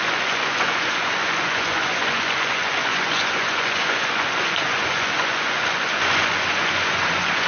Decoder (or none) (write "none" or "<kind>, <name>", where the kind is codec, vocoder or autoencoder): vocoder, Vocos